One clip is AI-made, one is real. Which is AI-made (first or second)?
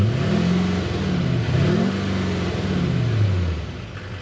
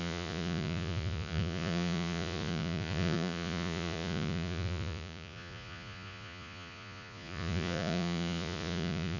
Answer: second